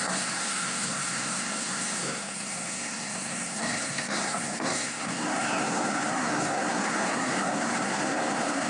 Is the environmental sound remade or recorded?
remade